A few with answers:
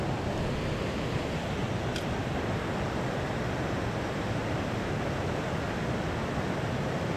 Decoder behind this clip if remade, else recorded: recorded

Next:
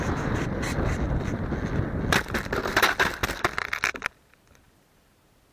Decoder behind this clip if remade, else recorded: recorded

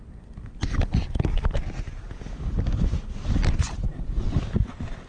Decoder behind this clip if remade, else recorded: recorded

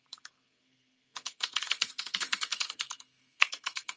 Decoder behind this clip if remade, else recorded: remade, codec, SNAC